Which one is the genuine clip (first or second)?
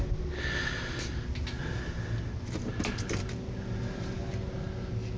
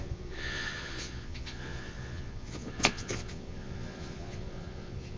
first